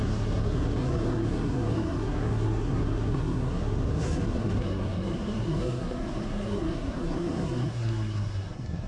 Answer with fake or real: fake